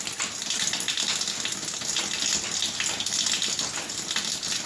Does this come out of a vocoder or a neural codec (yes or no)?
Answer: no